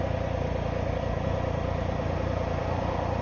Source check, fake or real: real